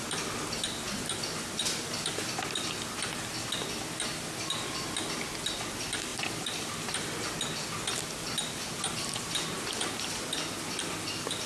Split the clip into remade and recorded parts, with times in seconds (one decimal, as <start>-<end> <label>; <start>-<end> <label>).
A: 0.0-6.1 recorded; 6.1-7.3 remade; 7.3-11.5 recorded